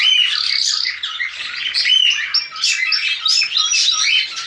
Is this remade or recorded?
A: recorded